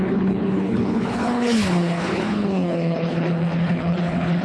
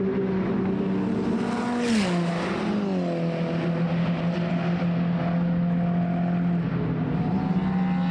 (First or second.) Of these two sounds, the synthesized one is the first